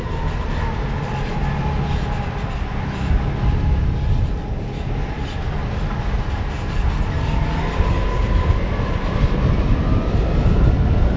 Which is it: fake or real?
real